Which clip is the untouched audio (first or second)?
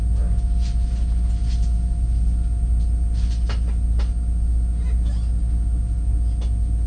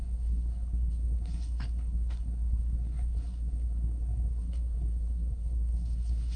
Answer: first